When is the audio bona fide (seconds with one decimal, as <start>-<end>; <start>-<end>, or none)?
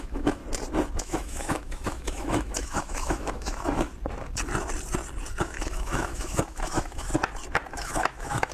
0.4-1.0; 3.9-5.4; 7.1-7.7